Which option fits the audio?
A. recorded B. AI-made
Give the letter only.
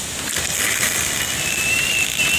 A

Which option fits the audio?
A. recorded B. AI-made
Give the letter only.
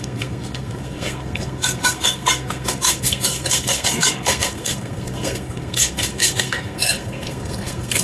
B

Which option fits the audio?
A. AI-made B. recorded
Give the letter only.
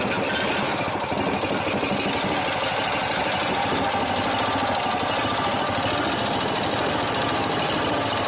B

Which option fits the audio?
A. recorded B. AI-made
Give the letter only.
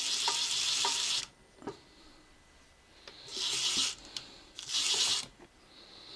A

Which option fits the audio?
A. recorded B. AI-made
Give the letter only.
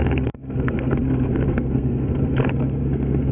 B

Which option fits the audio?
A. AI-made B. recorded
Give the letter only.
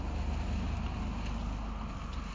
B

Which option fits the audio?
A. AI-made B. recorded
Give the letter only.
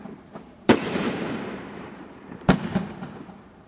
A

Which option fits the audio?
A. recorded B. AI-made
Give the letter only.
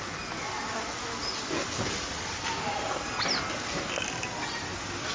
A